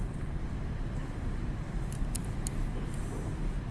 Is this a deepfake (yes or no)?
no